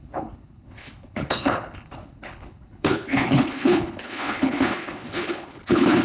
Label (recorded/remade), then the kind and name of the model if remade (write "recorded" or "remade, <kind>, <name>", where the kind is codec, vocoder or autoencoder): remade, codec, HILCodec